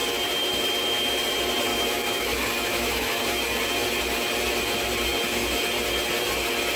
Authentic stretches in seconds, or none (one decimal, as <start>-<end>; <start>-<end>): 0.0-1.7; 3.4-6.8